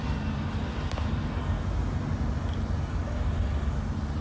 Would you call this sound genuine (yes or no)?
yes